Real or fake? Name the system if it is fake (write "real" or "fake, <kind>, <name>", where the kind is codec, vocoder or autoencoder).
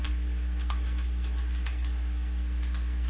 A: fake, codec, SNAC